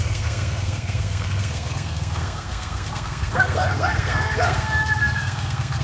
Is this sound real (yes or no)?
no